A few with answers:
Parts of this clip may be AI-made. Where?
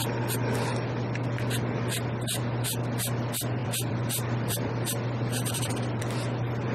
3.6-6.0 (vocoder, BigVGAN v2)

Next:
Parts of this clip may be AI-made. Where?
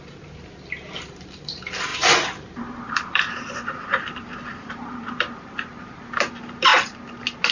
1.9-6.3 (vocoder, BigVGAN v2)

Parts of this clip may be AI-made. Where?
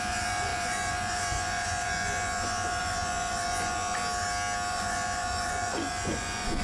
0.0-4.0 (vocoder, Vocos); 4.7-6.6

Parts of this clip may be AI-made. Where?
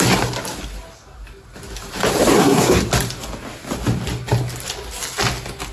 2.4-2.9 (codec, SNAC)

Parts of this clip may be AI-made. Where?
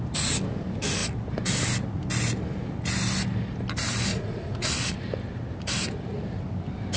4.1-4.7 (vocoder, Vocos)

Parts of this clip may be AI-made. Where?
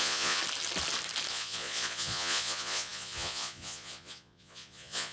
0.0-0.4 (vocoder, Vocos); 1.3-5.1